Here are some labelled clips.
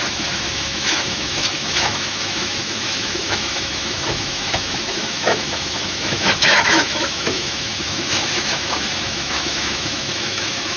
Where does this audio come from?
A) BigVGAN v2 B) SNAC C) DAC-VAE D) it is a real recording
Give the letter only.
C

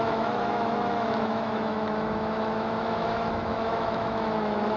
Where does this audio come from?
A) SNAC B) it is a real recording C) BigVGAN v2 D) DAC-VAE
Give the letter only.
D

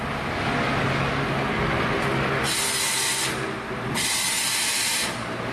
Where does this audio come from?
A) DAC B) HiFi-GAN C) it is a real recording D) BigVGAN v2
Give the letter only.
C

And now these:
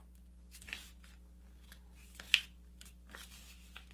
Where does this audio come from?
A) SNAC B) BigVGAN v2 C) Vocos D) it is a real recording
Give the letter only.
D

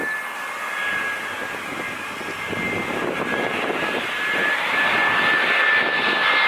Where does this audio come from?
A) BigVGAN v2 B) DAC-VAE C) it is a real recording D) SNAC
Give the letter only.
C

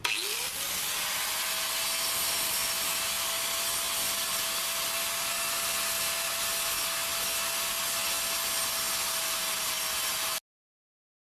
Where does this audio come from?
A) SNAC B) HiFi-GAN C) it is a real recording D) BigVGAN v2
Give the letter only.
C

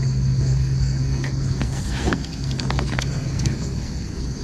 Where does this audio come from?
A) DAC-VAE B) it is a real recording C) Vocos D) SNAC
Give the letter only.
D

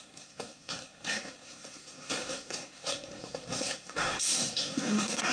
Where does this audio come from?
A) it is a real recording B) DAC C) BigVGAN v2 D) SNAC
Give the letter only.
D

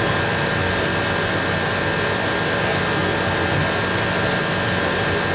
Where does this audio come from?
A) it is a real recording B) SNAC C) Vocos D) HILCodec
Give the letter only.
A